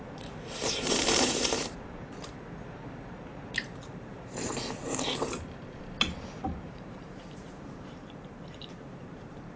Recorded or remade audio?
remade